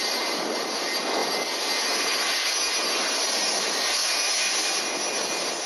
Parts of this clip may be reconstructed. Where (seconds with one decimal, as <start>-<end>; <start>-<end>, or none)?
0.0-1.2; 3.4-4.0